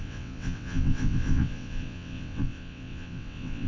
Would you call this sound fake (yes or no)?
yes